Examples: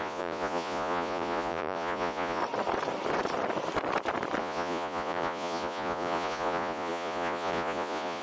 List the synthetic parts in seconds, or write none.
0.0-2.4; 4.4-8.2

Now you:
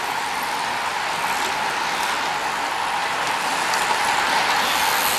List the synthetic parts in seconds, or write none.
none

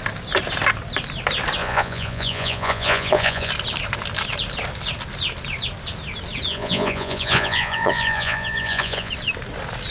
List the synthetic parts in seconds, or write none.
1.6-3.5; 6.5-9.1

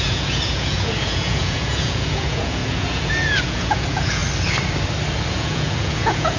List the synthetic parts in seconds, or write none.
0.0-4.2; 5.3-6.4